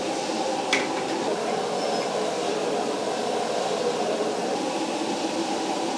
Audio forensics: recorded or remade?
recorded